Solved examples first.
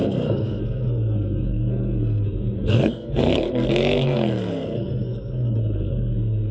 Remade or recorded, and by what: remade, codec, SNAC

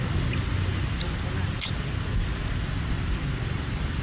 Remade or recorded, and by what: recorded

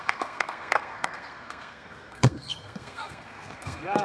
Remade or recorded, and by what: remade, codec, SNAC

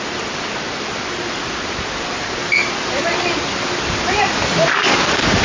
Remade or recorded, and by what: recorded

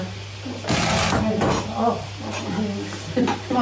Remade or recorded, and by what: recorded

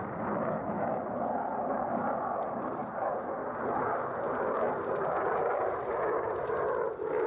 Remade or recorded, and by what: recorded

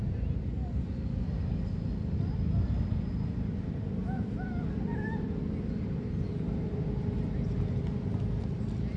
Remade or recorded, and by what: recorded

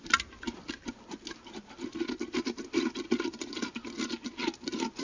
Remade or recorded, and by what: recorded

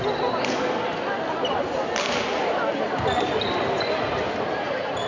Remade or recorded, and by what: recorded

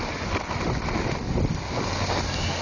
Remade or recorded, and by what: recorded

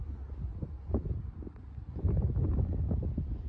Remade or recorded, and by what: recorded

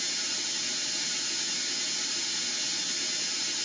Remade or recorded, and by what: recorded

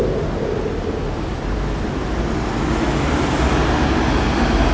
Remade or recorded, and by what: recorded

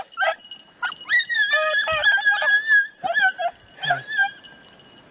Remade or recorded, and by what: recorded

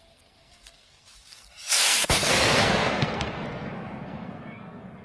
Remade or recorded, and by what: remade, codec, SNAC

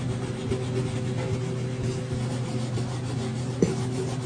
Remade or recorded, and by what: recorded